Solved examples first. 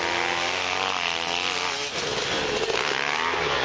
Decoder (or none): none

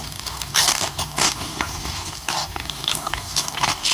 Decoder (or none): codec, DAC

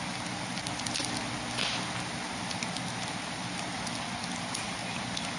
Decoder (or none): none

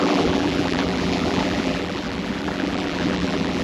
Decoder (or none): vocoder, BigVGAN v2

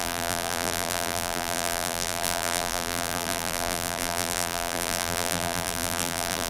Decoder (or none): vocoder, BigVGAN v2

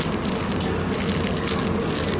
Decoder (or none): none